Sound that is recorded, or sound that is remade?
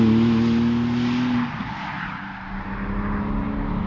recorded